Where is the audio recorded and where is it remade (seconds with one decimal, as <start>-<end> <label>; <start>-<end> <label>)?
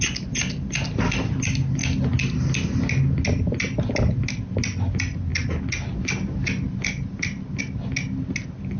0.0-8.8 recorded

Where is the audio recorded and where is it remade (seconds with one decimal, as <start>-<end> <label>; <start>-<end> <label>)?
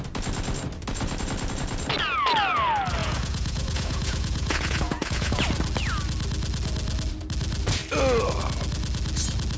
0.0-3.0 recorded; 3.0-5.4 remade; 5.4-9.6 recorded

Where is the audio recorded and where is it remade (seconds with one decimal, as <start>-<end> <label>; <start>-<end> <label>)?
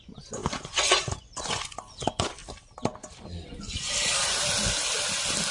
0.0-2.4 remade; 2.4-5.5 recorded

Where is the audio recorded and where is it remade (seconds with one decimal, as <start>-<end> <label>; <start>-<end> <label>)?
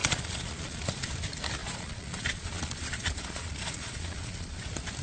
0.0-1.1 remade; 1.1-1.6 recorded; 1.6-4.6 remade; 4.6-5.0 recorded